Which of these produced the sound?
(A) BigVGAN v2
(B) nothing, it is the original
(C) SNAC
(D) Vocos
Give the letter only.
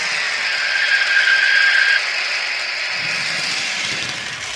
B